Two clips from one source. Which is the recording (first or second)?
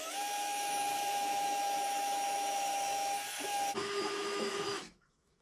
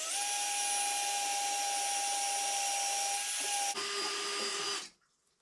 second